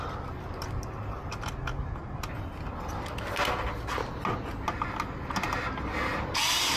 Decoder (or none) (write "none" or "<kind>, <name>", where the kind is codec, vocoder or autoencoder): none